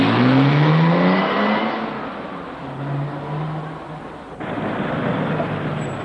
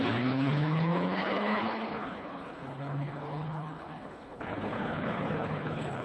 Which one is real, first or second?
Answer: first